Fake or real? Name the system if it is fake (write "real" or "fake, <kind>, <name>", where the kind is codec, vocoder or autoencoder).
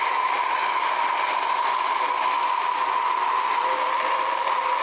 real